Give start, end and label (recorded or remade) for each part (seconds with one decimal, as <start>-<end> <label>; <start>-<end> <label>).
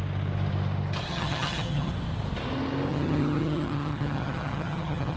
0.0-1.1 recorded; 1.1-1.9 remade; 1.9-2.9 recorded; 2.9-5.2 remade